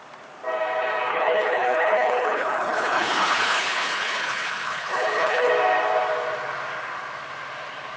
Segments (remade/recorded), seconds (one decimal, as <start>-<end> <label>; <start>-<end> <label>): 0.0-1.1 recorded; 1.1-5.5 remade; 5.5-8.0 recorded

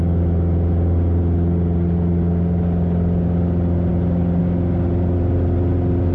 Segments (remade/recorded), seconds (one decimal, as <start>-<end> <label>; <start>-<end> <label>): 0.0-6.1 recorded

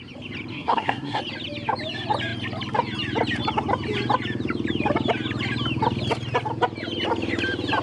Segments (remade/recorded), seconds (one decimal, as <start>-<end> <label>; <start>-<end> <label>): 0.0-0.5 recorded; 0.5-1.2 remade; 1.2-7.8 recorded